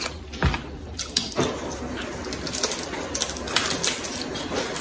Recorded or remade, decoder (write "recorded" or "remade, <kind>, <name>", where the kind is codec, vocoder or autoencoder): recorded